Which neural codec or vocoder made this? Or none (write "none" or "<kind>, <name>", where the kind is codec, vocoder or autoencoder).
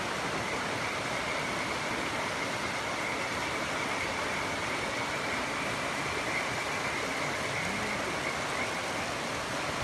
none